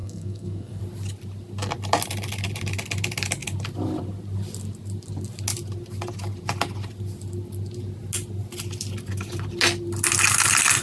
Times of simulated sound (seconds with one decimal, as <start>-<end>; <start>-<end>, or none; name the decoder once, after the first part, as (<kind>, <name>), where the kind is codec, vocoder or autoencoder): 0.0-0.8 (codec, SNAC)